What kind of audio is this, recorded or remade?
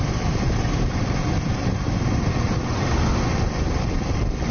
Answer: remade